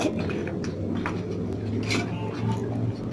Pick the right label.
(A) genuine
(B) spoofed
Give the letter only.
A